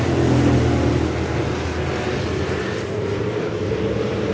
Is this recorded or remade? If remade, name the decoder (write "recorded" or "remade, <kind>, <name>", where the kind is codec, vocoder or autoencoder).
recorded